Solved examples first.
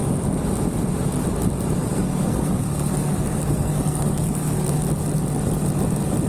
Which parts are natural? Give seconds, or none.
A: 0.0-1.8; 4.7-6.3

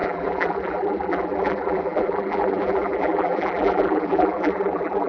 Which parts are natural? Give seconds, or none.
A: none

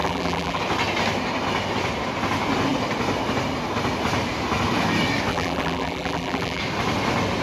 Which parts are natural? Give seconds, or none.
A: 0.6-5.3; 6.6-7.4